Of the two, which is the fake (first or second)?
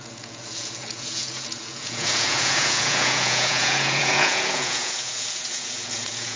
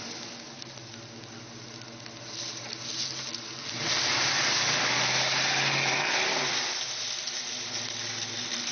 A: first